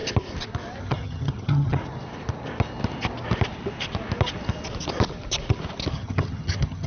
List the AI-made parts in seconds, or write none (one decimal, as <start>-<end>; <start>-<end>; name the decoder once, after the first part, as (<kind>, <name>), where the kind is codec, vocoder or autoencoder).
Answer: 0.8-1.8 (vocoder, HiFi-GAN); 5.9-6.9